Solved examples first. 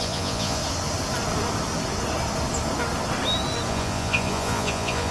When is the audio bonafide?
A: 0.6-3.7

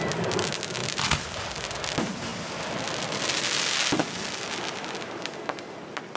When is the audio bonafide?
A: 0.0-6.2

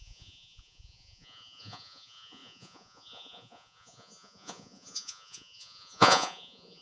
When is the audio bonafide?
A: none

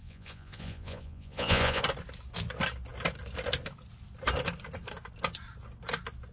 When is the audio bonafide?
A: 1.8-6.3

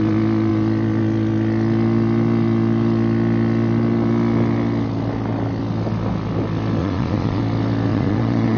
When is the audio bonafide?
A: 0.0-6.8; 7.4-7.9

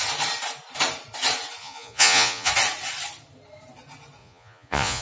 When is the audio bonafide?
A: 0.0-1.6; 2.5-4.2

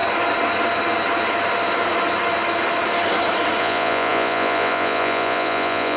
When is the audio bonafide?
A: 0.0-3.6

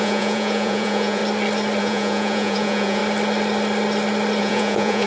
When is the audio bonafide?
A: 1.2-1.8; 3.0-4.4